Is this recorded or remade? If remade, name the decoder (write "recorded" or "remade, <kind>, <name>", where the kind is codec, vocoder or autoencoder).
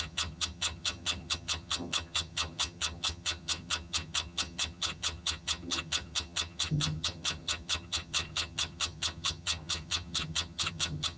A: remade, vocoder, HiFi-GAN